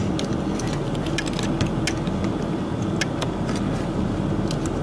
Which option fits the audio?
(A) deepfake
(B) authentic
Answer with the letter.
B